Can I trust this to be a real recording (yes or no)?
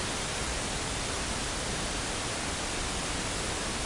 yes